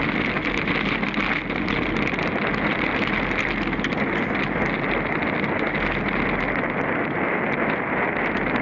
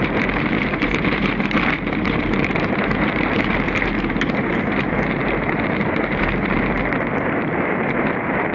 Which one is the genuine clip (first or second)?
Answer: first